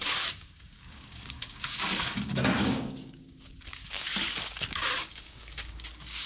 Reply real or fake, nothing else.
fake